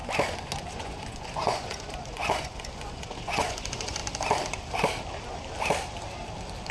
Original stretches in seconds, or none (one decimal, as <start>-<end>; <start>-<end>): 0.0-0.7; 4.0-6.7